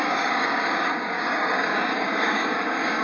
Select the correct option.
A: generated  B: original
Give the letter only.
A